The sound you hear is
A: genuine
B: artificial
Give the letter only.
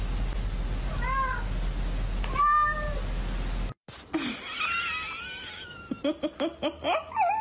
A